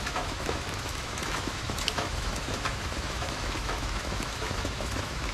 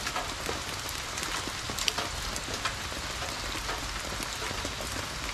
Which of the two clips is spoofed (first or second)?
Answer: first